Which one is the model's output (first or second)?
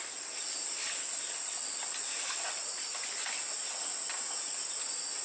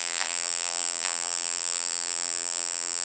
second